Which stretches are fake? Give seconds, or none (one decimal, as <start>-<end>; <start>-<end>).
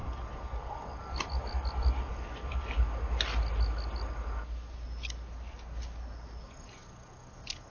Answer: none